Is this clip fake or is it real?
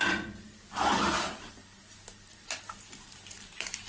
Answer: real